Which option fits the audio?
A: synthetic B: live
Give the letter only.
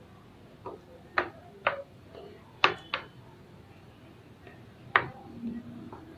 B